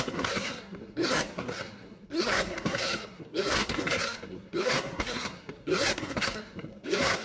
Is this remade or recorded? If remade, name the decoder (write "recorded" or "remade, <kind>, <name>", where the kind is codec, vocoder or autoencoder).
remade, codec, SNAC